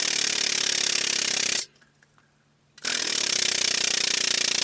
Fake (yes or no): no